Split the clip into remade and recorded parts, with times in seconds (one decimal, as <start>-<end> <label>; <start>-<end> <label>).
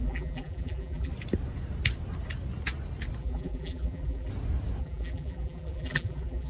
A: 0.0-1.1 remade; 1.1-3.2 recorded; 3.2-4.3 remade; 4.3-4.8 recorded; 4.8-6.5 remade